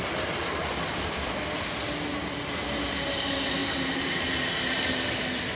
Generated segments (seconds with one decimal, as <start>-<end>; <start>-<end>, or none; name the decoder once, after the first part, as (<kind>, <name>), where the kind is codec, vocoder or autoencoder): none

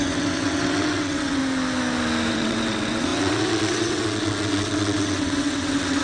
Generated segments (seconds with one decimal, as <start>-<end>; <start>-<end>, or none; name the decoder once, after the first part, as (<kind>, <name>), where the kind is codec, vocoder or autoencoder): 0.0-1.4 (vocoder, WaveNeXt); 2.3-6.0